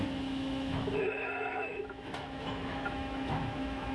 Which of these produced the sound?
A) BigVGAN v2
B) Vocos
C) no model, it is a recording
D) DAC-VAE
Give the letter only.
D